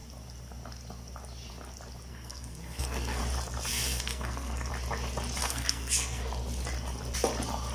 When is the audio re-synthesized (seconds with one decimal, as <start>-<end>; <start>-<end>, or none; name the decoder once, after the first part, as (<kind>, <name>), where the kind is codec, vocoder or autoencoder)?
2.1-3.2 (codec, SNAC); 3.7-4.7; 5.4-6.3